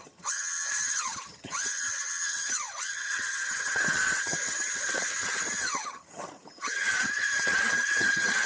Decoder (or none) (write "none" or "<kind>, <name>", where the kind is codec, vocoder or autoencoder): vocoder, HiFi-GAN